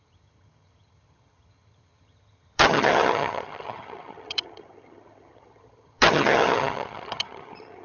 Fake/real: fake